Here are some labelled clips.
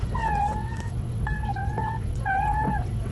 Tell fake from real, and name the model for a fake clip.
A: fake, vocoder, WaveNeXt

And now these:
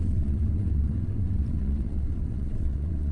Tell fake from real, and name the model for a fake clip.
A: fake, vocoder, WaveNeXt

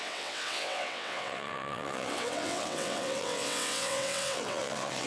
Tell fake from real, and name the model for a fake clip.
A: fake, vocoder, WaveNeXt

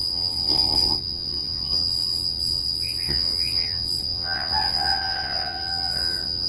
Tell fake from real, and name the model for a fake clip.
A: fake, vocoder, WaveNeXt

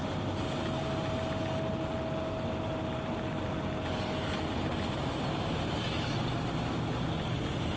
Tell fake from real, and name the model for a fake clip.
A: real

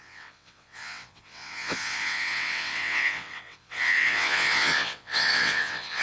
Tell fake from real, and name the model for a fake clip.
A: fake, vocoder, WaveNeXt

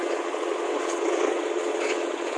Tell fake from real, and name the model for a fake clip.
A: fake, vocoder, WaveNeXt